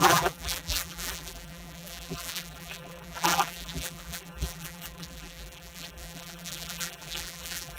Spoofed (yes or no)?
yes